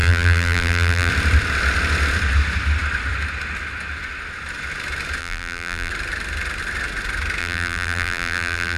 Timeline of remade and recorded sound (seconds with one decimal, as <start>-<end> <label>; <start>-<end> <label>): 0.0-1.1 remade; 1.1-5.2 recorded; 5.2-5.9 remade; 5.9-7.4 recorded; 7.4-8.8 remade

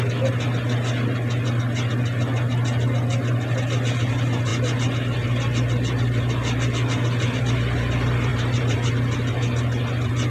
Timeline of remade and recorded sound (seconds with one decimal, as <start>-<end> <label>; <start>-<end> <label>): 0.0-8.3 recorded; 8.3-8.9 remade; 8.9-10.3 recorded

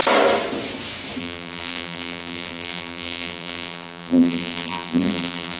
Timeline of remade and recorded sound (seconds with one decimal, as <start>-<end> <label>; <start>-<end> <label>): 0.0-1.2 recorded; 1.2-5.6 remade

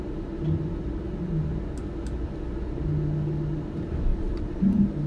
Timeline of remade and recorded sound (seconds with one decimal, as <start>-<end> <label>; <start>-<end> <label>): 0.0-4.1 recorded; 4.1-5.1 remade

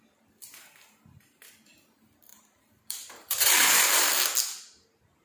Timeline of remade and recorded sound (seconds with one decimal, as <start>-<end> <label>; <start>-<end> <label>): 0.0-2.3 recorded; 2.3-4.1 remade; 4.1-5.2 recorded